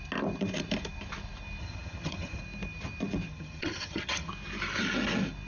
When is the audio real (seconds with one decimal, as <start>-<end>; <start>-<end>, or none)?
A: 0.0-1.6; 2.4-3.3; 4.3-5.5